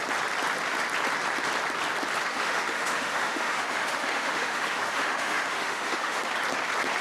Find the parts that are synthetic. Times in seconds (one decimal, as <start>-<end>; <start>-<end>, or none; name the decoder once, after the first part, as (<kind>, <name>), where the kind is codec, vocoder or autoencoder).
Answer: 2.3-6.3 (autoencoder, DAC-VAE)